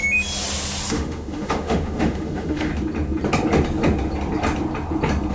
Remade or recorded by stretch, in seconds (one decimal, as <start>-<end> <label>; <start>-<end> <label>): 0.0-0.9 recorded; 0.9-2.7 remade; 2.7-5.3 recorded